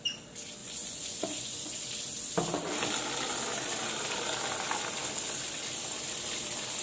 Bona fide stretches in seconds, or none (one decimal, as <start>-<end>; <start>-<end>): 0.0-0.6; 1.8-6.8